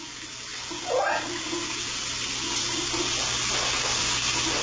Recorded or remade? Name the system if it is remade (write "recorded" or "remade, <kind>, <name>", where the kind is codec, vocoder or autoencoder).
recorded